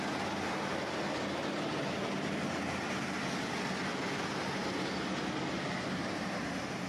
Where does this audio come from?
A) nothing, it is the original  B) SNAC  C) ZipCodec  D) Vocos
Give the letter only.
A